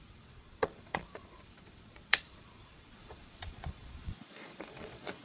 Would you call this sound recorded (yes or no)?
no